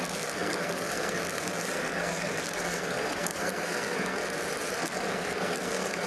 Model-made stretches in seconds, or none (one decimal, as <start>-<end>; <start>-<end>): 0.0-4.2; 4.7-6.1